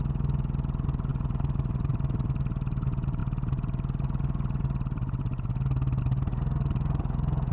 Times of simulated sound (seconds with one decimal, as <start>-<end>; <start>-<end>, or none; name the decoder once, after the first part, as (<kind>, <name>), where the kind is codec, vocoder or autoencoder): none